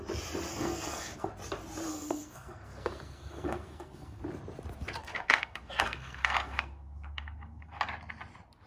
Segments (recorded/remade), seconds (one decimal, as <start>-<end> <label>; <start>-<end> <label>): 0.0-0.5 recorded; 0.5-1.3 remade; 1.3-1.9 recorded; 1.9-4.2 remade; 4.2-5.0 recorded; 5.0-7.8 remade; 7.8-8.7 recorded